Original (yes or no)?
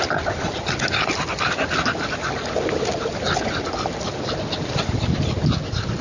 yes